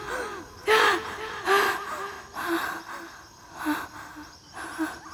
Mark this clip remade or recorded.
recorded